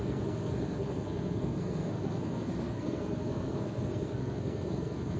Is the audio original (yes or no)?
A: no